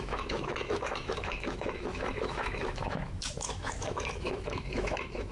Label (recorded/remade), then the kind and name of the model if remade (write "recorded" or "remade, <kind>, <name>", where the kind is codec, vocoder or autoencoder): remade, autoencoder, DAC-VAE